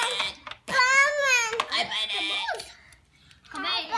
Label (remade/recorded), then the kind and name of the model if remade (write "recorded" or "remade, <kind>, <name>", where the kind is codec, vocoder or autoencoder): recorded